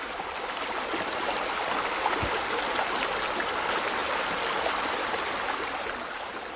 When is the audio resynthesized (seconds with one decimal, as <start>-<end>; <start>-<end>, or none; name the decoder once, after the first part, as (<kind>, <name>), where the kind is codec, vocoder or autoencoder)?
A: none